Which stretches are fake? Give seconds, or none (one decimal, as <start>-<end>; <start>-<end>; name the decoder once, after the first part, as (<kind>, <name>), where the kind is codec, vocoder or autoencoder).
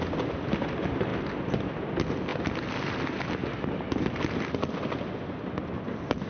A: none